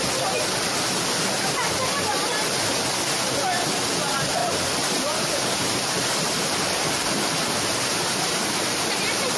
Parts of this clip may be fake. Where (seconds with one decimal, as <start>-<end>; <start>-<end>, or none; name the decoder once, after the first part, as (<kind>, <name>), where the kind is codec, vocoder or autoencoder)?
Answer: 4.4-9.0 (vocoder, BigVGAN v2)